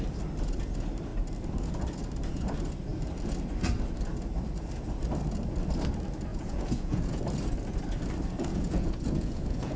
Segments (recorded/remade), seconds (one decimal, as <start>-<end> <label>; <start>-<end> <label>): 0.0-6.3 recorded; 6.3-7.2 remade; 7.2-8.5 recorded; 8.5-9.8 remade